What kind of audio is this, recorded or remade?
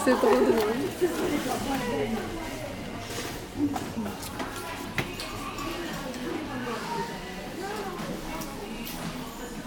recorded